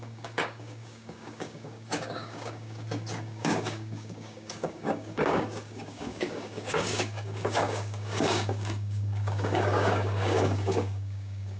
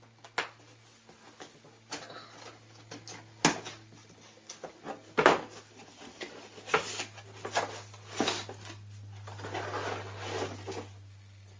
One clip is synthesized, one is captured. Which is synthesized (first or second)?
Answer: first